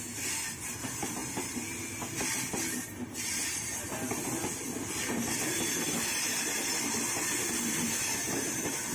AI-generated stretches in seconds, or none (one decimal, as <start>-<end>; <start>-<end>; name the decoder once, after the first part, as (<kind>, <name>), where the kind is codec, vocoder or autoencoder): none